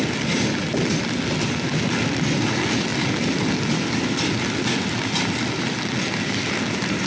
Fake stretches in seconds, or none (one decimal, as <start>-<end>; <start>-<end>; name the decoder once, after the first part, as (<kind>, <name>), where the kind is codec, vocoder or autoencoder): 0.0-2.9 (vocoder, BigVGAN v2); 5.3-7.1

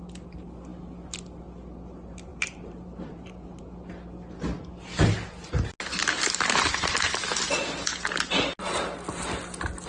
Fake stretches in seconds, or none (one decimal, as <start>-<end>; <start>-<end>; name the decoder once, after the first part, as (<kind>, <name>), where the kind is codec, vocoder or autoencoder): 2.3-3.6 (vocoder, BigVGAN v2)

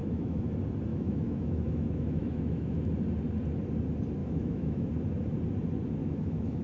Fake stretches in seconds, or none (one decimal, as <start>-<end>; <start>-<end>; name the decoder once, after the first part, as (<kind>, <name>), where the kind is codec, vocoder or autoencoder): 0.0-0.5 (autoencoder, DAC-VAE); 0.9-2.9; 4.2-4.9; 6.0-6.6

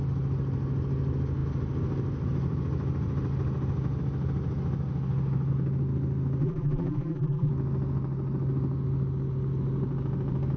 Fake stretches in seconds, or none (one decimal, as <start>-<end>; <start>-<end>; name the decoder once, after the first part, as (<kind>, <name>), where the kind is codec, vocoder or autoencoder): 6.4-7.5 (vocoder, BigVGAN v2)